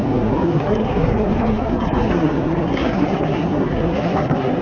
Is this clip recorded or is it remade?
remade